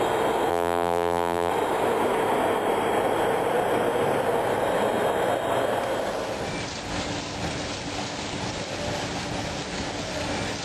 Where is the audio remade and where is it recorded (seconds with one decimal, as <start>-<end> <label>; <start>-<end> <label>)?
0.0-0.5 recorded; 0.5-1.5 remade; 1.5-10.6 recorded